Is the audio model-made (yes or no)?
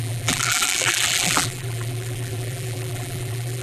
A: yes